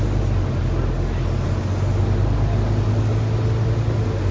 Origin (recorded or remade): recorded